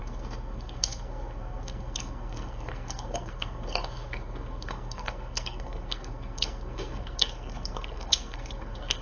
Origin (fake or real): fake